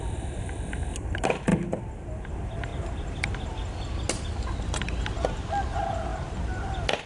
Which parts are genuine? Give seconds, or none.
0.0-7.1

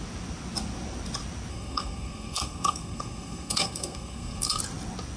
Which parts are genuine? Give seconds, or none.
0.0-1.5; 4.6-5.2